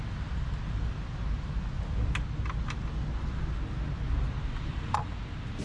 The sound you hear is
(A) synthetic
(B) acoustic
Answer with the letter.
B